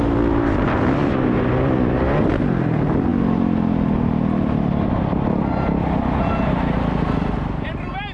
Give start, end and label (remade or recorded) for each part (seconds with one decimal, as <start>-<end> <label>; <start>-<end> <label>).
0.0-8.1 recorded